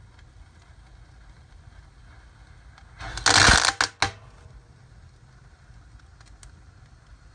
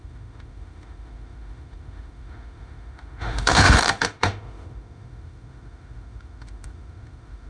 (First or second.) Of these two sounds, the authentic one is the first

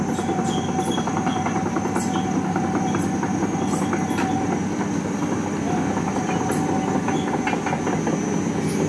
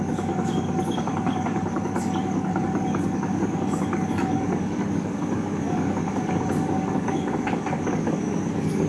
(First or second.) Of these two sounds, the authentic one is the first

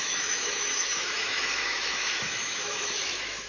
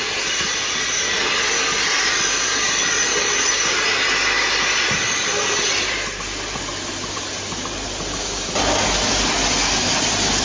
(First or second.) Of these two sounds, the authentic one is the second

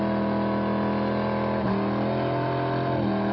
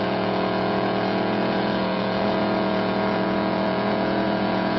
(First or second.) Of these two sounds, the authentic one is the first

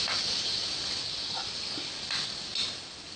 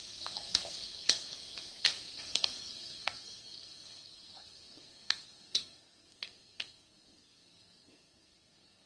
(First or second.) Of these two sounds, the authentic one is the first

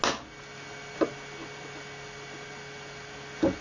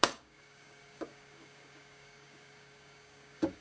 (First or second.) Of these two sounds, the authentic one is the first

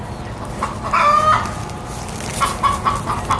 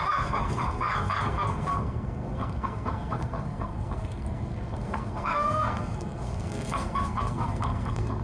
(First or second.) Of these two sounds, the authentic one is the first